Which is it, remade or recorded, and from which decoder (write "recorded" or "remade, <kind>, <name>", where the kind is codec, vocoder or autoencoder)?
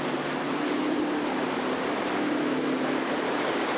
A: recorded